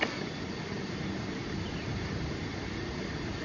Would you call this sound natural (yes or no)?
yes